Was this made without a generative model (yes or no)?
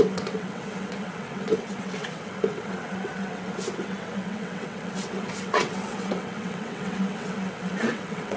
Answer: no